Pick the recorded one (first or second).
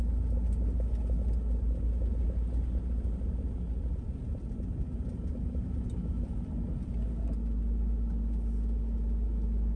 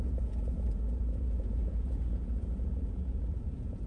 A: first